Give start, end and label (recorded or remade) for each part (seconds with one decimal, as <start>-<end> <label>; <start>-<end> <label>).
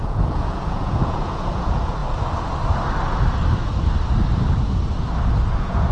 0.0-2.0 remade; 2.0-5.5 recorded; 5.5-5.9 remade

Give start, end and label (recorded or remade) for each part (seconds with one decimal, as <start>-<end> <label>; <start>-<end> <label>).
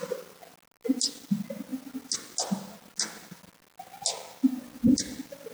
0.0-5.5 recorded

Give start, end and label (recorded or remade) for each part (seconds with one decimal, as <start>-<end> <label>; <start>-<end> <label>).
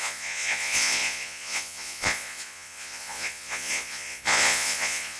0.0-5.2 remade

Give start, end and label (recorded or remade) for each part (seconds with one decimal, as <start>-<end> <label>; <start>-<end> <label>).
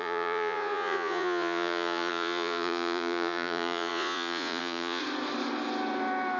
0.0-5.0 remade; 5.0-6.4 recorded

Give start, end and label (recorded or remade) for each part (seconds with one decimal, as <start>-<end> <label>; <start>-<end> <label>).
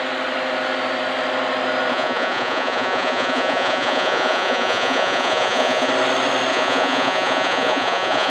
0.0-1.9 recorded; 1.9-5.9 remade; 5.9-6.5 recorded; 6.5-8.3 remade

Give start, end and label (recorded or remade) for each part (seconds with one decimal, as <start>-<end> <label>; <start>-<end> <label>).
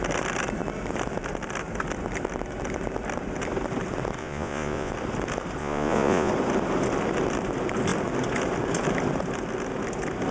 0.0-4.2 recorded; 4.2-4.9 remade; 4.9-5.6 recorded; 5.6-6.3 remade; 6.3-10.3 recorded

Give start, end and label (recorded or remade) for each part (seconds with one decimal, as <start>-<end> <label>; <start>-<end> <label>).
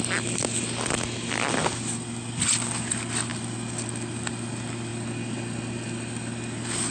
0.0-6.9 recorded